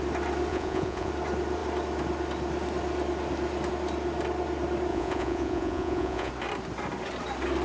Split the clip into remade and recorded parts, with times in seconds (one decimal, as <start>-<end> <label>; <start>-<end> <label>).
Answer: 0.0-0.5 recorded; 0.5-1.1 remade; 1.1-4.9 recorded; 4.9-6.3 remade; 6.3-7.6 recorded